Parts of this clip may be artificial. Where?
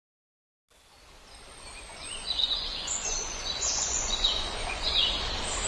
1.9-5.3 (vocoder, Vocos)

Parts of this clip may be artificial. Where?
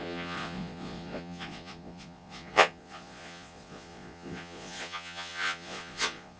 0.0-6.4 (vocoder, Vocos)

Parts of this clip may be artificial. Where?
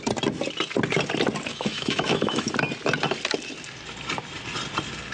1.5-2.5 (autoencoder, DAC-VAE)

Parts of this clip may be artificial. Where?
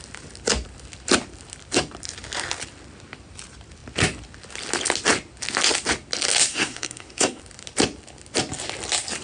6.5-7.4 (codec, SNAC)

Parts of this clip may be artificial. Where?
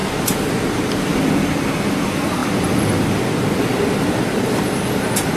none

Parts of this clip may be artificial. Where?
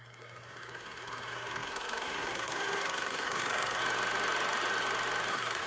0.0-3.8 (codec, SNAC); 5.3-5.7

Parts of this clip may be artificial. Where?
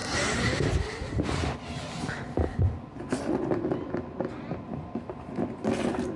none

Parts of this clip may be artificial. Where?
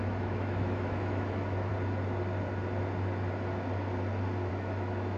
0.0-1.7 (autoencoder, DAC-VAE); 4.5-5.2